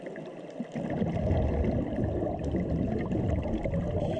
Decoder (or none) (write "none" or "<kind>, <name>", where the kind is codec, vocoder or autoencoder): none